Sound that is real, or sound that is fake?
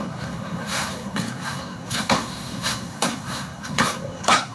fake